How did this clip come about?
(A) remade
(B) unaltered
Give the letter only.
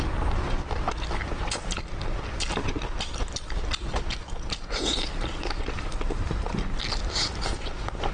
B